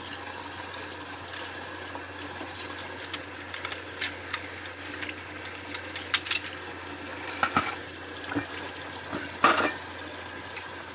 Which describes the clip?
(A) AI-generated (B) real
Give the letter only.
B